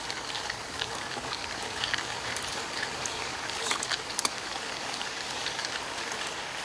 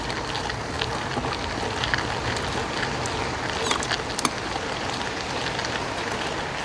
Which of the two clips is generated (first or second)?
first